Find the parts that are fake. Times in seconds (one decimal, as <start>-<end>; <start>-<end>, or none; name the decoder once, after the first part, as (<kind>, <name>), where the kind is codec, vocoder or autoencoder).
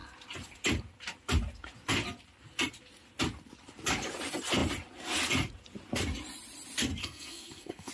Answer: 7.0-7.9 (codec, SNAC)